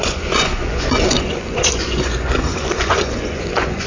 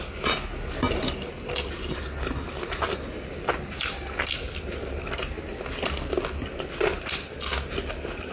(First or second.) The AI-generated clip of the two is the first